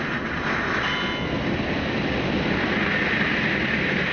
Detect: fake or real real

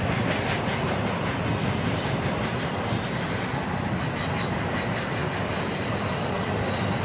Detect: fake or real real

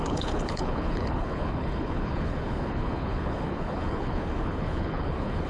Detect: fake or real fake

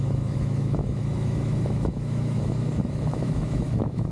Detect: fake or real fake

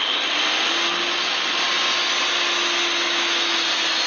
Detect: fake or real real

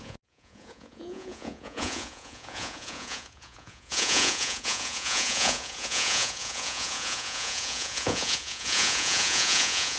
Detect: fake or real fake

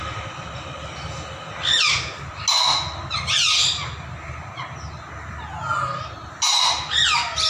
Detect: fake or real real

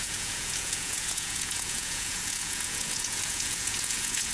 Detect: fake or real fake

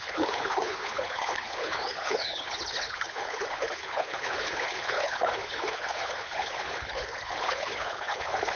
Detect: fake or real fake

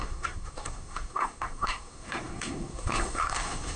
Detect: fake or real fake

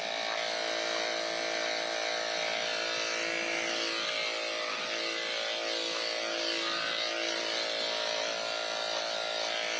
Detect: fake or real real